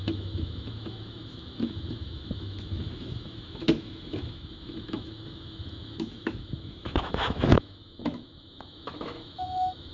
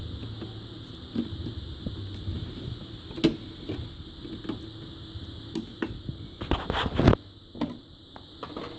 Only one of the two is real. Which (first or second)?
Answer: second